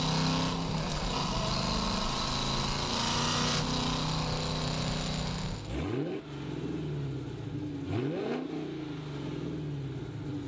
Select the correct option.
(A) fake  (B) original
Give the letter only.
B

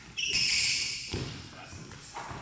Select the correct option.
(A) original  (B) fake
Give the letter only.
A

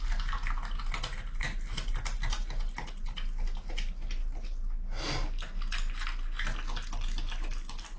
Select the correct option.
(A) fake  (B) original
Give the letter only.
B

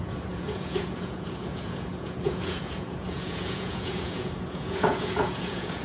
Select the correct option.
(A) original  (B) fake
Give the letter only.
B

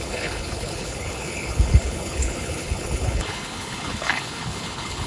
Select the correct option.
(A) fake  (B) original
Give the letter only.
A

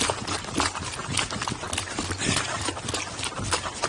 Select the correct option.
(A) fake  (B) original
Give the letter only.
B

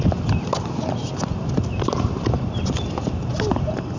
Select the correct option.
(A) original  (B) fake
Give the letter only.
A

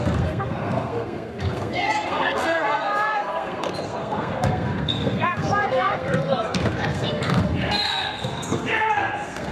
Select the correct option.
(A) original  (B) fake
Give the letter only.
B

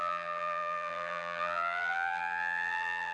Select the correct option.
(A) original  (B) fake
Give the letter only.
B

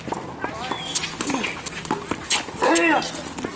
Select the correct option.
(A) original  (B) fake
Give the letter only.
A